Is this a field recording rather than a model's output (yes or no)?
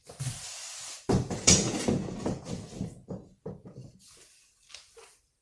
no